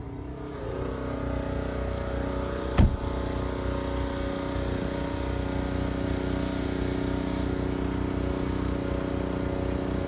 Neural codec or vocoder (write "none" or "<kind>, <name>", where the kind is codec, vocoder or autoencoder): none